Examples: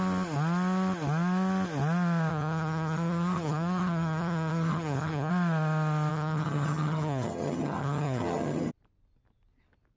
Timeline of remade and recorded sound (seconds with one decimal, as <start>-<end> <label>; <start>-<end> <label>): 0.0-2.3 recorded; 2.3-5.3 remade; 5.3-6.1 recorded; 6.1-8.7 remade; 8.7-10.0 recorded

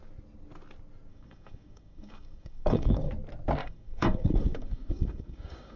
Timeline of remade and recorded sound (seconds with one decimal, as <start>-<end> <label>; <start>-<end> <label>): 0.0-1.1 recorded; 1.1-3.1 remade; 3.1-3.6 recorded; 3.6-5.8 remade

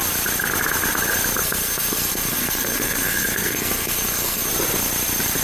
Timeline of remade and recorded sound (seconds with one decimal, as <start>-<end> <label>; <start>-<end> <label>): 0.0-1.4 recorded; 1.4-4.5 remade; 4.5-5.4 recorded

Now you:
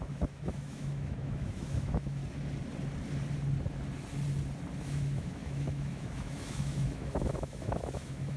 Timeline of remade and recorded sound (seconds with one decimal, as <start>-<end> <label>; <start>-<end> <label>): 0.0-2.2 remade; 2.2-4.8 recorded; 4.8-8.4 remade